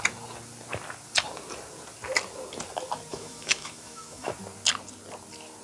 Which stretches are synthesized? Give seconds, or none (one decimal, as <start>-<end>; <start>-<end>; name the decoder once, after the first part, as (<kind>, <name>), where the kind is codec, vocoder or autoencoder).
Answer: 3.1-4.3 (autoencoder, DAC-VAE)